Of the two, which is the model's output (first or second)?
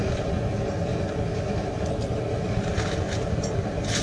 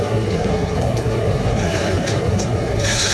second